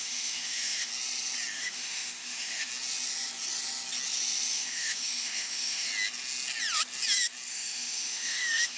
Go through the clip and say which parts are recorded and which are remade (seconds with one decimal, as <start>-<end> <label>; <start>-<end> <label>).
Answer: 0.0-0.9 remade; 0.9-1.5 recorded; 1.5-2.7 remade; 2.7-4.5 recorded; 4.5-5.9 remade; 5.9-7.5 recorded; 7.5-8.8 remade